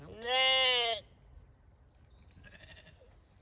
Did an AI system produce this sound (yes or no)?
no